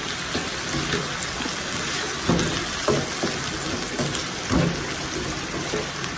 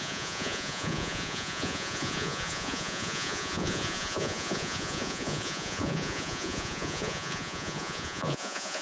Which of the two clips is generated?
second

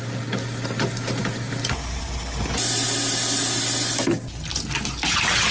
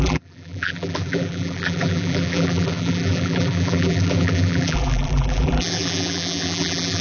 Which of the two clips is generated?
second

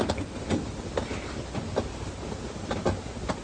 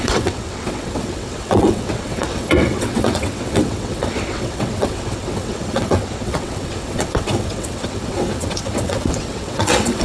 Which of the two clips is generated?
second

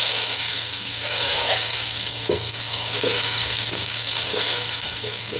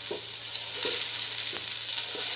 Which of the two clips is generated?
first